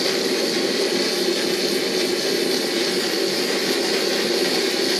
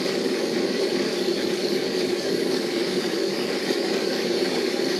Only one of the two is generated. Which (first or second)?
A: second